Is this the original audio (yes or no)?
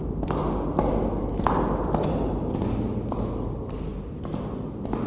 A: yes